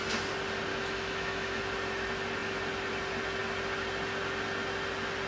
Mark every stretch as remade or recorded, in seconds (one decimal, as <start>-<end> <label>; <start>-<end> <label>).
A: 0.0-0.7 recorded; 0.7-1.6 remade; 1.6-5.3 recorded